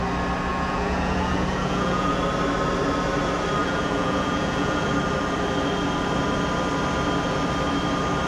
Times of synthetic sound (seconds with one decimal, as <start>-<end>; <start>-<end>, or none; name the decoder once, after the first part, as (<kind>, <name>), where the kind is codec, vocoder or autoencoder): 0.5-2.2 (vocoder, Vocos); 3.6-4.9